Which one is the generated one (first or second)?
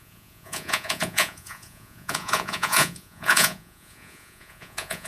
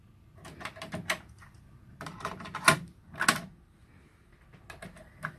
first